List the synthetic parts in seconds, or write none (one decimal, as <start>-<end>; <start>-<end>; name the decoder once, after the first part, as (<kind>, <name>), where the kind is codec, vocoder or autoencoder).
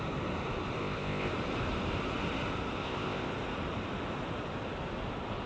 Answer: 0.8-1.3 (codec, ZipCodec); 2.8-3.3